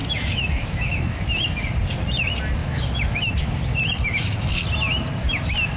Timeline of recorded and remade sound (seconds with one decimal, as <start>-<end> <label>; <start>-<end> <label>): 0.0-1.6 remade; 1.6-2.6 recorded; 2.6-3.3 remade; 3.3-5.8 recorded